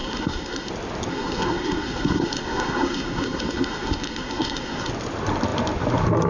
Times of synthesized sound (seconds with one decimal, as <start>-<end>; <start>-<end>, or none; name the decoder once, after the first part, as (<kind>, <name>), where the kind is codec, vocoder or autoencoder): 0.0-0.7 (codec, SNAC); 1.1-4.9